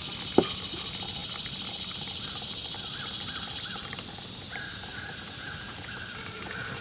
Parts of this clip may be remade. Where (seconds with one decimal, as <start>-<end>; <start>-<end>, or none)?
4.9-5.9